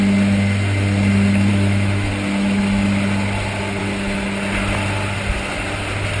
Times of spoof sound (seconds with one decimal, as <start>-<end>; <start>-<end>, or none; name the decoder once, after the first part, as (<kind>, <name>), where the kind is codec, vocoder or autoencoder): 1.5-2.1 (autoencoder, DAC-VAE)

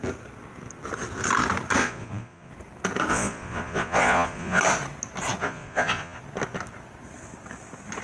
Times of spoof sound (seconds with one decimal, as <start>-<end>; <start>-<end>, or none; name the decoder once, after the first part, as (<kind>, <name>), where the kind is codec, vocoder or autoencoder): 1.8-2.5 (vocoder, Vocos); 3.1-4.6; 5.4-6.2

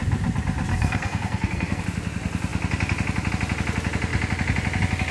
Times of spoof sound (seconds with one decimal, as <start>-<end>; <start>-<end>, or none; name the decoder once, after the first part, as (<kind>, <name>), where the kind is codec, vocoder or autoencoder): 0.7-1.8 (codec, SNAC)

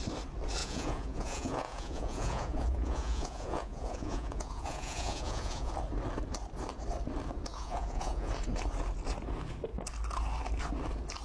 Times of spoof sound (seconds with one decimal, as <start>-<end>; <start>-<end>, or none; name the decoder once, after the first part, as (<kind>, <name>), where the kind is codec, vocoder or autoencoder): 0.6-5.7 (vocoder, Vocos); 7.5-8.3

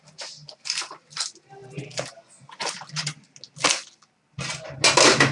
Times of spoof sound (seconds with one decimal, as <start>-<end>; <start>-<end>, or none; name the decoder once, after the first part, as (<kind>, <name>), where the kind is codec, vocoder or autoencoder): none